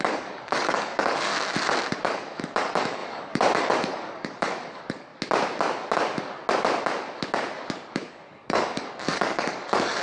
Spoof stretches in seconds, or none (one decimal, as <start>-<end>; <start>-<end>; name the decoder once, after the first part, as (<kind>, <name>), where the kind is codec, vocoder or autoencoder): 0.0-1.3 (codec, DAC); 2.0-5.1; 7.9-10.0